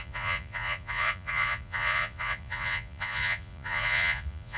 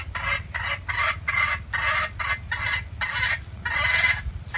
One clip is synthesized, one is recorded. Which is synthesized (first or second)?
first